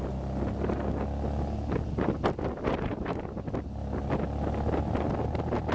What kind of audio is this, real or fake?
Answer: real